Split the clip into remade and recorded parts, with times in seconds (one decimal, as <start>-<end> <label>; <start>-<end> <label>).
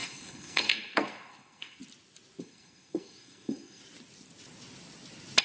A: 0.0-1.8 remade; 1.8-2.4 recorded; 2.4-3.8 remade; 3.8-5.4 recorded